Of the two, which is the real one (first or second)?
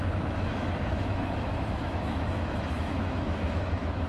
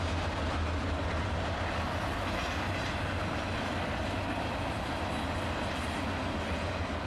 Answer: second